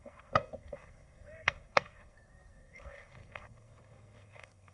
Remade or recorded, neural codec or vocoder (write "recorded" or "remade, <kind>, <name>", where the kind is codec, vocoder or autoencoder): remade, codec, SNAC